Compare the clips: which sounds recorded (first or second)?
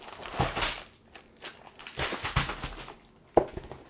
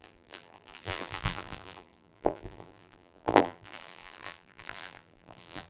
first